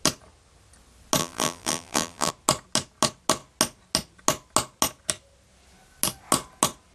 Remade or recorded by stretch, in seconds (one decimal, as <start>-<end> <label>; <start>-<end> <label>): 0.0-1.2 recorded; 1.2-2.3 remade; 2.3-6.9 recorded